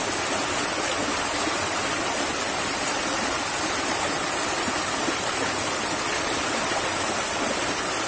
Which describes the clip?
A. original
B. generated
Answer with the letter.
A